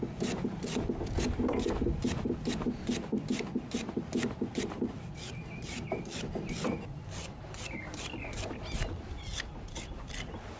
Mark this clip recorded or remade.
recorded